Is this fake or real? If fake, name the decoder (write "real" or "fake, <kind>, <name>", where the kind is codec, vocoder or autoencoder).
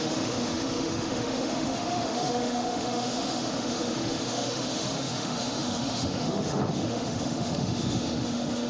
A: fake, autoencoder, DAC-VAE